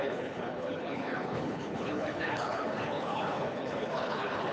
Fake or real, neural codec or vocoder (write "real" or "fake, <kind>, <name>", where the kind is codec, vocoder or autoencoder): fake, codec, HILCodec